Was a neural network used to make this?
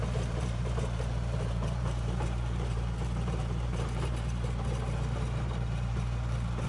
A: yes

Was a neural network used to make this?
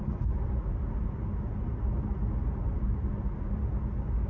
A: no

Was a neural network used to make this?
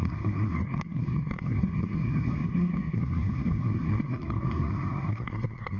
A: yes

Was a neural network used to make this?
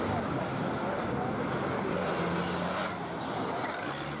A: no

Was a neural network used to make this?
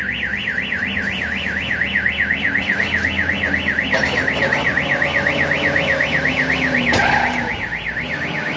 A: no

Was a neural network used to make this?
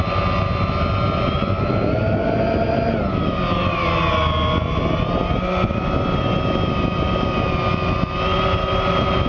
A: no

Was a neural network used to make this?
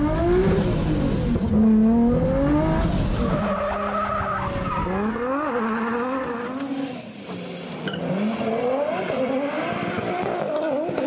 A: no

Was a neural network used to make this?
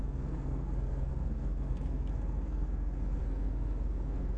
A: yes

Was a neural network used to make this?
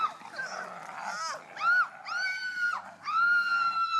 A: no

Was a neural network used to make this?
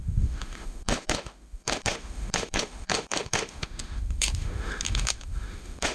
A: yes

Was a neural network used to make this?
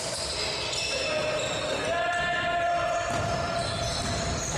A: no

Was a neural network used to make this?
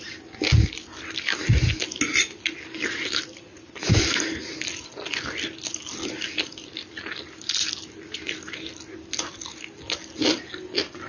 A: no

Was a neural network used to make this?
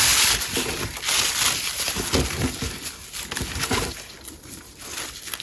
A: no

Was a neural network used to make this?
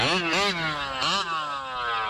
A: no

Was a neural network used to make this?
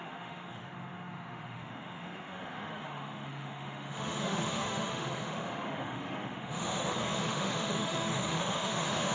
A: yes